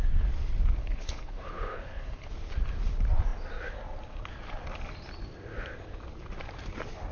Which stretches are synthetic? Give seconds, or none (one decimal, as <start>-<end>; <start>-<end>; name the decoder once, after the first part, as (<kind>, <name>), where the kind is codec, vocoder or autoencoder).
0.8-2.3 (codec, HILCodec)